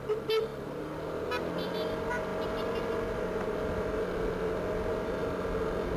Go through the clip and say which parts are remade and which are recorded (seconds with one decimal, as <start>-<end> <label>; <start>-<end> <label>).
0.0-6.0 recorded